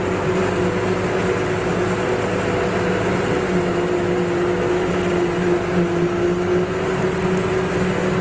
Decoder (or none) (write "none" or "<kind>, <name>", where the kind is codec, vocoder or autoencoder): none